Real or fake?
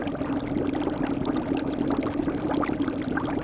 real